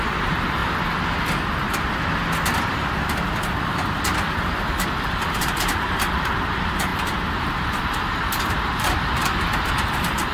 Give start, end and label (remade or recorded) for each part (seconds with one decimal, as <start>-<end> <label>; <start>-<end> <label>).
0.0-0.6 remade; 0.6-3.7 recorded; 3.7-10.3 remade